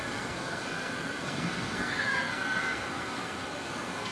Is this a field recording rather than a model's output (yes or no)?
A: no